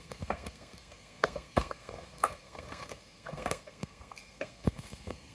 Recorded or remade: remade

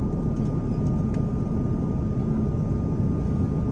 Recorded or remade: recorded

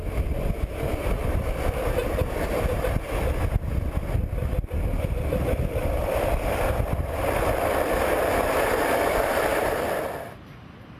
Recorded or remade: remade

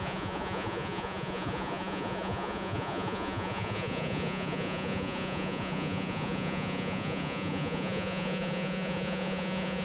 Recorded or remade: remade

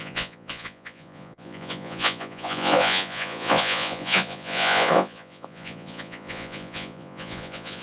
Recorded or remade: remade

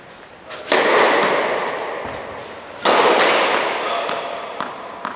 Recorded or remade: recorded